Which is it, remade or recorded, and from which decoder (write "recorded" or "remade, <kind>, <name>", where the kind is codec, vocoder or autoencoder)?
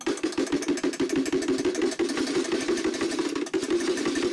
recorded